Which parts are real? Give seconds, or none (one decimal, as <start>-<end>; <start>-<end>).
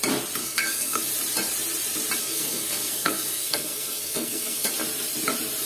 0.0-0.4; 1.0-2.2; 4.7-5.7